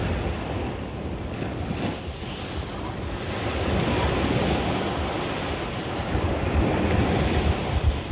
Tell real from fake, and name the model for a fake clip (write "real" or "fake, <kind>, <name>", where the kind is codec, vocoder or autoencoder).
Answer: real